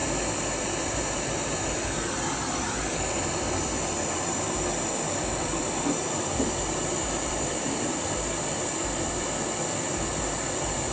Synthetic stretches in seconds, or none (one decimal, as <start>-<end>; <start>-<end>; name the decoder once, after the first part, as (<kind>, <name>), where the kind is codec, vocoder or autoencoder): 0.6-10.9 (vocoder, BigVGAN v2)

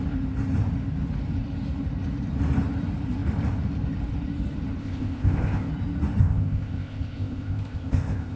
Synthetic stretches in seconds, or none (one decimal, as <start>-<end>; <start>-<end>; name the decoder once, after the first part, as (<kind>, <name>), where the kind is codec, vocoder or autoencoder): 4.8-5.7 (codec, ZipCodec); 6.2-8.4

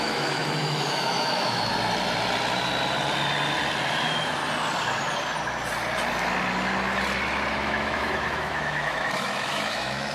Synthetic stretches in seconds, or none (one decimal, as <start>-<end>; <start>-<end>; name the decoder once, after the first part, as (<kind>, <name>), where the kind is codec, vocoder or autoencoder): 0.0-1.7 (autoencoder, DAC-VAE); 4.0-4.4; 7.5-10.1

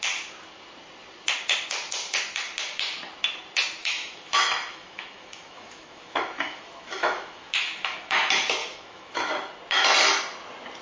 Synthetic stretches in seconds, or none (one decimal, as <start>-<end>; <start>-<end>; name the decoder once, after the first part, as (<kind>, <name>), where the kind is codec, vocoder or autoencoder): 3.8-8.2 (autoencoder, DAC-VAE); 8.6-9.3

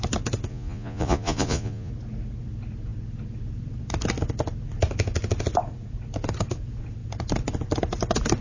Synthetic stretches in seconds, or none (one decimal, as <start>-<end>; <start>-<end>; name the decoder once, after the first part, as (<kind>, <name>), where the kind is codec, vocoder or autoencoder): 0.5-1.9 (vocoder, Vocos)

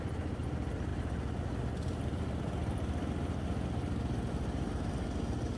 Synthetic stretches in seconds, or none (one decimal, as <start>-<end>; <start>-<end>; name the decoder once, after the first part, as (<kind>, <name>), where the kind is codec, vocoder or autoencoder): 0.0-0.9 (vocoder, BigVGAN v2); 4.3-5.6

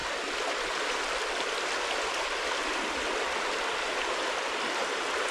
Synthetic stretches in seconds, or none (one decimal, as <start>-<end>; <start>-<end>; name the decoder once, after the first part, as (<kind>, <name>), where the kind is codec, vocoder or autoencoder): none